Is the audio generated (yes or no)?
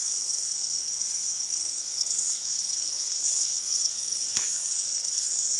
yes